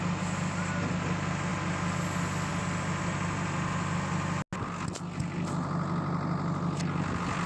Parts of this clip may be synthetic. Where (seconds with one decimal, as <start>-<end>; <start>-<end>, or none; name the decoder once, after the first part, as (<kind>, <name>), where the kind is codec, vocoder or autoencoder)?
none